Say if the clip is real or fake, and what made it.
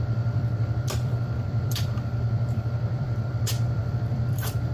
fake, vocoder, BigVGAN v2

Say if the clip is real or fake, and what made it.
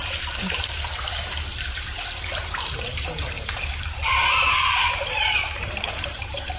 fake, vocoder, BigVGAN v2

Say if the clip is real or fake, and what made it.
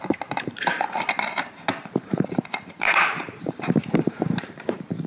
fake, vocoder, BigVGAN v2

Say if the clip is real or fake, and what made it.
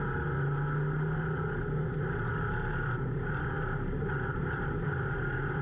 real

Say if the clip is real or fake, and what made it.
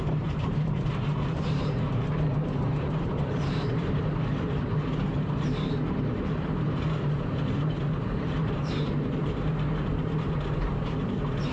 fake, vocoder, BigVGAN v2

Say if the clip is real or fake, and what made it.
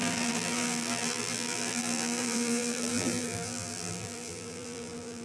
fake, vocoder, BigVGAN v2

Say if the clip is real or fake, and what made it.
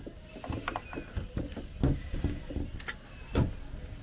real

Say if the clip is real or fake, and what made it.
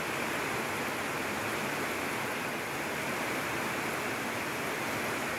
real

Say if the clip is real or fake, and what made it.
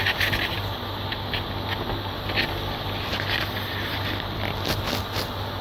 real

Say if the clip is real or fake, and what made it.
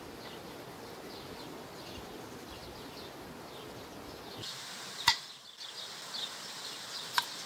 real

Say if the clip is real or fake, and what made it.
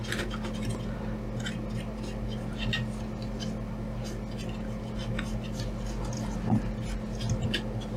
real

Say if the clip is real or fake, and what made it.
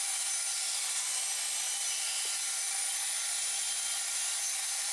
real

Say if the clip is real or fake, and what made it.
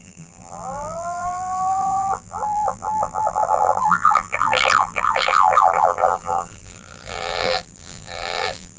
fake, vocoder, BigVGAN v2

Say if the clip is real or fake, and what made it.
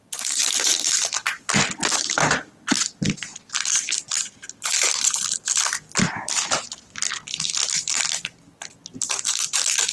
real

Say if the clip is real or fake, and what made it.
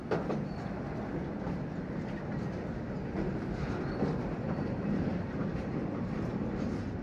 real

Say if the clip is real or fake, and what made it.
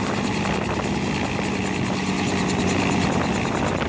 real